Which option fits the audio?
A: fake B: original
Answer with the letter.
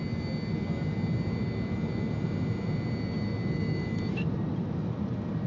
B